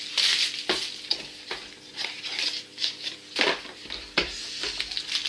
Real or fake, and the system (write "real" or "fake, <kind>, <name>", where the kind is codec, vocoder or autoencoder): real